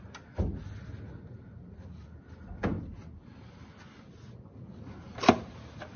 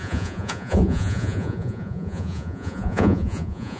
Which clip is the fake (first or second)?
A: second